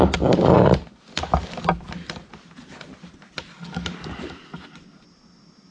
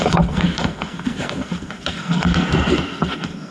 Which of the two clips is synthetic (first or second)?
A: second